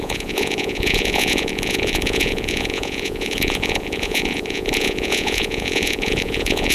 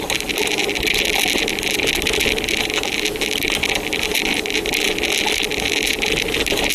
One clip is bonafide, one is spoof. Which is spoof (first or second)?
first